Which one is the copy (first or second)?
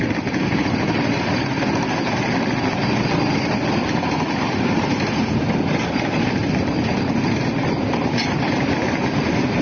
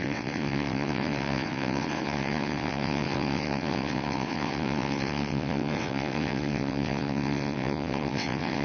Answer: second